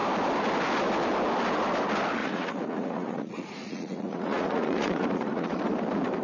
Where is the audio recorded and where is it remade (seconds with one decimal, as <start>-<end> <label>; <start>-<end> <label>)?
0.0-2.2 recorded; 2.2-5.6 remade; 5.6-6.2 recorded